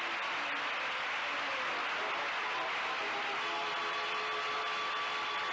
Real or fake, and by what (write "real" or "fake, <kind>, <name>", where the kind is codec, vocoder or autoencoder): real